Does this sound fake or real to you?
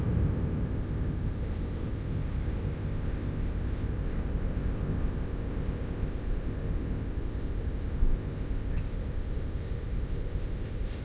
fake